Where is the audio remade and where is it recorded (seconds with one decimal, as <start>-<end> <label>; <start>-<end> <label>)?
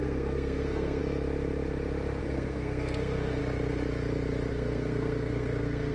0.0-1.0 remade; 1.0-2.2 recorded; 2.2-3.4 remade; 3.4-4.5 recorded; 4.5-5.9 remade